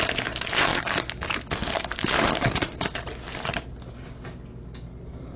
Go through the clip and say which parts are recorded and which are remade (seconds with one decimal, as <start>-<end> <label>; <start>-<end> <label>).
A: 0.0-5.4 recorded